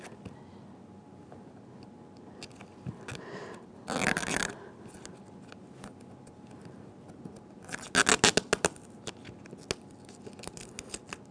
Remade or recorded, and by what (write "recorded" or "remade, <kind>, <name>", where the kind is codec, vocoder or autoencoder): recorded